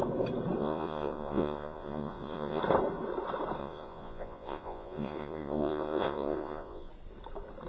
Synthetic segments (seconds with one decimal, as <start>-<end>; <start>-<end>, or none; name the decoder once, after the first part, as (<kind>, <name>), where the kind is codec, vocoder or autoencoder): 0.6-2.6 (vocoder, Vocos); 3.6-6.9